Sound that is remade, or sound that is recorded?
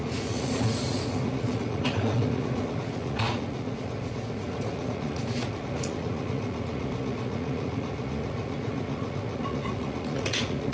remade